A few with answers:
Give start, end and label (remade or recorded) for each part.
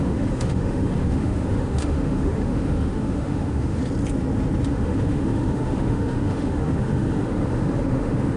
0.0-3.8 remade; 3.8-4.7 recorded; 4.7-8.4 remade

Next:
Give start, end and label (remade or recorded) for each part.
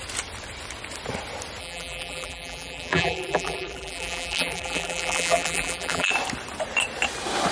0.0-1.6 recorded; 1.6-6.1 remade; 6.1-7.5 recorded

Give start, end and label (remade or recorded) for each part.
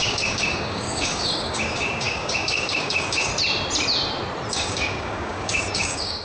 0.0-3.3 remade; 3.3-4.5 recorded; 4.5-6.2 remade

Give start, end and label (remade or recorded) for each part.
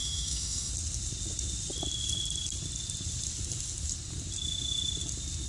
0.0-0.7 remade; 0.7-5.5 recorded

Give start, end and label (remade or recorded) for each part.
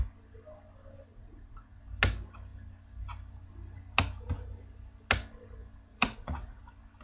0.0-1.1 recorded; 1.1-1.8 remade; 1.8-5.9 recorded; 5.9-6.6 remade; 6.6-7.0 recorded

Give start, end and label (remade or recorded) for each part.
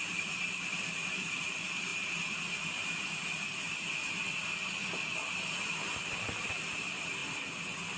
0.0-1.9 remade; 1.9-6.3 recorded; 6.3-7.2 remade; 7.2-8.0 recorded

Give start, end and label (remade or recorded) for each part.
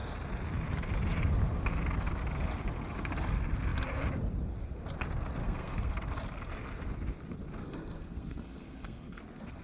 0.0-5.4 recorded; 5.4-5.9 remade; 5.9-7.6 recorded; 7.6-9.2 remade; 9.2-9.6 recorded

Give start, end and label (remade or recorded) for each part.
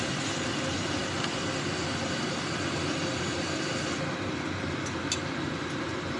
0.0-6.2 recorded